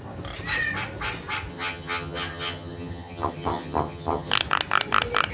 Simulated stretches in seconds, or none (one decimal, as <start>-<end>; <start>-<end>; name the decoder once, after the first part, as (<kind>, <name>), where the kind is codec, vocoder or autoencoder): 1.5-4.3 (vocoder, HiFi-GAN)